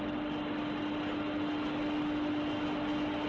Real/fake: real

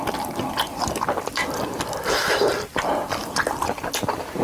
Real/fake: real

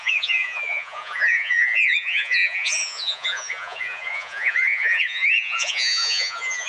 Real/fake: fake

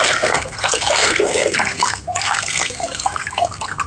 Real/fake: fake